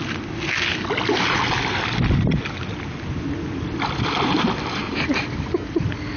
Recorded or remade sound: recorded